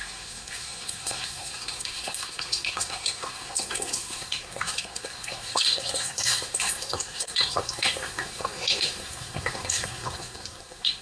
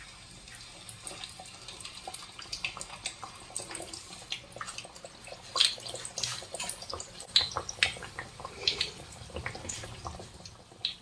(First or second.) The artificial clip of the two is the first